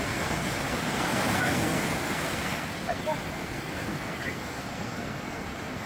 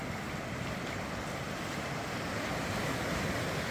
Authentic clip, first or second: second